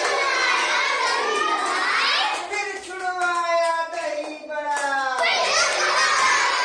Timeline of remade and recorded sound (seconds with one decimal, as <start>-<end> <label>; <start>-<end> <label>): 0.0-6.6 recorded